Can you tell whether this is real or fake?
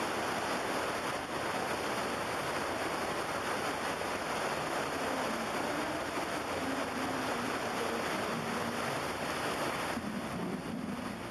real